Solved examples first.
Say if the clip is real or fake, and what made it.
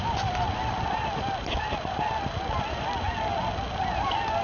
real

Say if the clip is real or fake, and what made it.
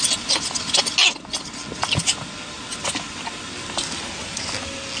real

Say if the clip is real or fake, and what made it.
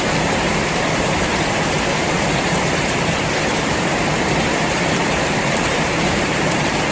fake, vocoder, BigVGAN v2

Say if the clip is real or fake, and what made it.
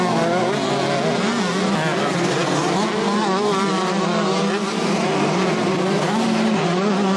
real